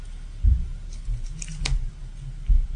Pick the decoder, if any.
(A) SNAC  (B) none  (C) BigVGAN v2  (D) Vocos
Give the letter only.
B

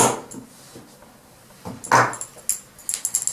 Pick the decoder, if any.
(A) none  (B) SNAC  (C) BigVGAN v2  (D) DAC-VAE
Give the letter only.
A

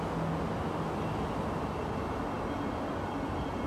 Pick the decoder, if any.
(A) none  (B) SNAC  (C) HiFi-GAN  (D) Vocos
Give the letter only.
A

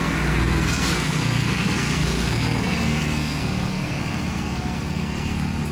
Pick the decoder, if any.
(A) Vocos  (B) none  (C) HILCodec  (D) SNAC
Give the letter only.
D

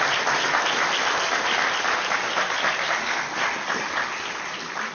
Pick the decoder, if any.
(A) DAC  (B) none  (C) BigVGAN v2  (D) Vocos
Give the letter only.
B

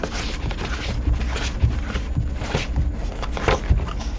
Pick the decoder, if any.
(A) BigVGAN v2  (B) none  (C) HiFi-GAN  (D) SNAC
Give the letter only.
B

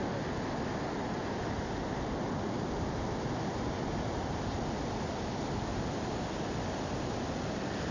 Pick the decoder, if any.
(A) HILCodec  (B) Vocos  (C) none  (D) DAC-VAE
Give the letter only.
C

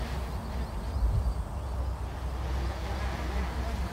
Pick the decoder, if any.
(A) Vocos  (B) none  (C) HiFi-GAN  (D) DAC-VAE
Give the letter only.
B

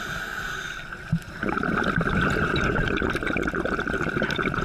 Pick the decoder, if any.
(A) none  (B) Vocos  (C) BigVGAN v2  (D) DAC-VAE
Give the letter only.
A